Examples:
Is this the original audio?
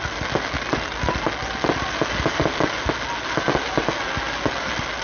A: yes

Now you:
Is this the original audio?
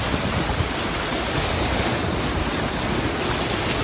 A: yes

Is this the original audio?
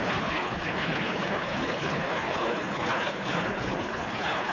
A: no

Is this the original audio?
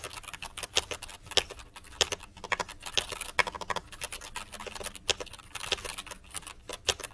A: yes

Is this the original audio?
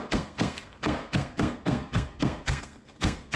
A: no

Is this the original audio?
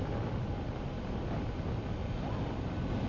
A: yes